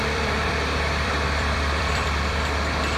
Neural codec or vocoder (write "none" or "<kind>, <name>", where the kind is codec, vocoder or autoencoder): vocoder, BigVGAN v2